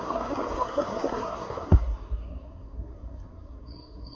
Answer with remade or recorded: remade